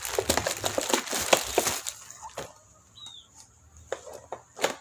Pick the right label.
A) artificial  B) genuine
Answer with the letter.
B